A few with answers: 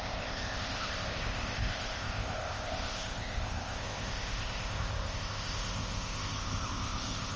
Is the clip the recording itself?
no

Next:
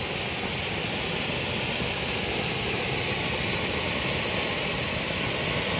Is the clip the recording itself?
yes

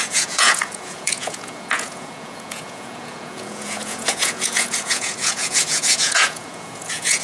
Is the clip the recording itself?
no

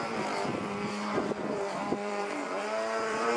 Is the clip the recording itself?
no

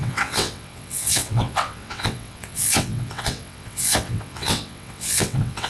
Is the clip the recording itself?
no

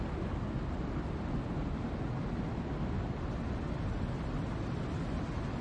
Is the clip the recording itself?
yes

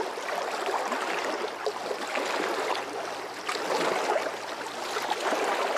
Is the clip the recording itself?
yes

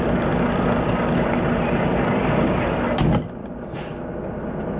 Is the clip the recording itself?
yes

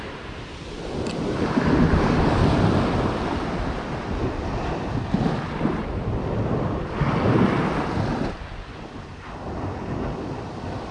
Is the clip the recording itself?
yes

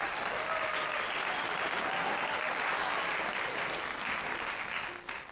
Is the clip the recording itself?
yes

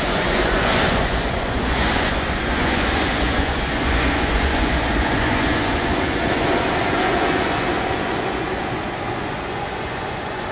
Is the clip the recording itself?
no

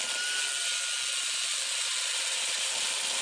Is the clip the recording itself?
yes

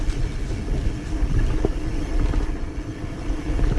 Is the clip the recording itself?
yes